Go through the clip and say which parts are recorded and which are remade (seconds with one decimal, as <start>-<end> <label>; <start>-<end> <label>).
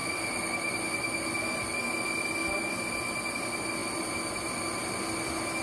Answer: 0.0-5.6 recorded